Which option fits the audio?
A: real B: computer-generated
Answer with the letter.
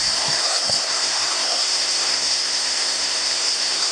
B